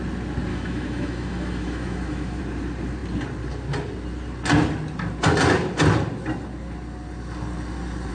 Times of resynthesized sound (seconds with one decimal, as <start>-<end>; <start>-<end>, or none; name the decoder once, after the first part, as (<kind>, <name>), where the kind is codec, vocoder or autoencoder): 0.5-2.4 (autoencoder, DAC-VAE)